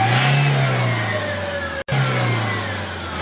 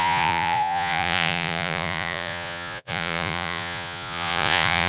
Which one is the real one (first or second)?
first